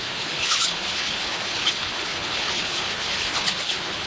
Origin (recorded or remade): remade